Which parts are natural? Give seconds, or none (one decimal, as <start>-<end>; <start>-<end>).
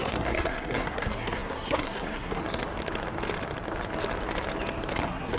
2.4-5.0